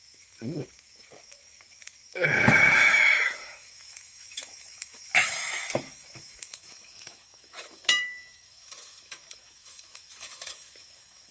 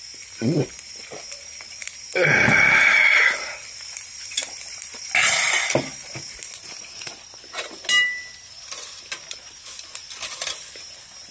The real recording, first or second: second